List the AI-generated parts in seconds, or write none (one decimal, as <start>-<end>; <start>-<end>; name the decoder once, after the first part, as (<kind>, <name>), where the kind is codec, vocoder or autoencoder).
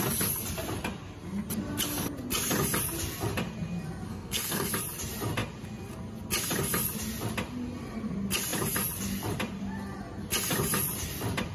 4.1-4.7 (codec, SNAC)